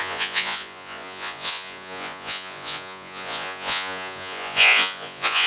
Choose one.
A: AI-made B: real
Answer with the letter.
A